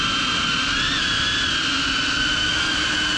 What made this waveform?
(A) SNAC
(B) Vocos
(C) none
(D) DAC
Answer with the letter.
C